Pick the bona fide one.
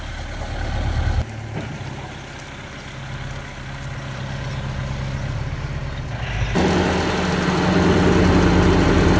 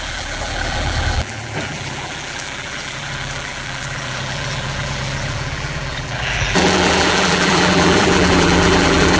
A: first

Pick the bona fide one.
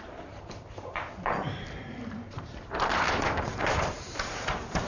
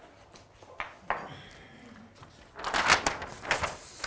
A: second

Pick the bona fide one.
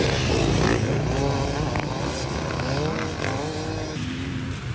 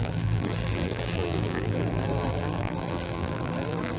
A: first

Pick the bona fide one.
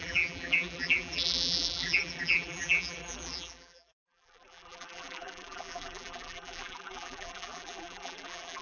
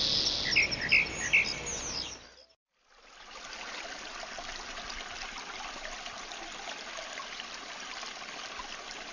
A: second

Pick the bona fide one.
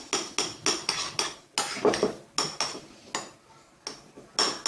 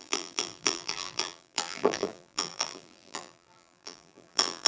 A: first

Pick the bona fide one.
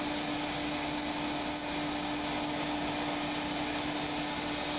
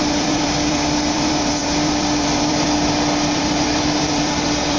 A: first